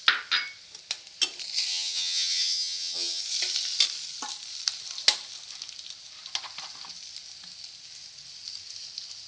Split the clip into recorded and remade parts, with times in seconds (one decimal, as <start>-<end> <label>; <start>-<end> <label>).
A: 0.0-1.7 recorded; 1.7-3.2 remade; 3.2-9.3 recorded